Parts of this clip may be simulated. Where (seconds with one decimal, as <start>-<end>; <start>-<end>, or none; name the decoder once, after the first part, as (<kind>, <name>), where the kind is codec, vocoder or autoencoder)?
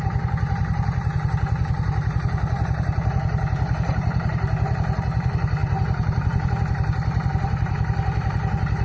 0.0-8.8 (vocoder, BigVGAN v2)